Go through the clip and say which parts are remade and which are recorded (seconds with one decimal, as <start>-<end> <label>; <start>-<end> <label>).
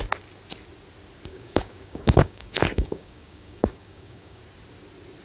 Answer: 0.0-1.3 recorded; 1.3-4.4 remade; 4.4-5.2 recorded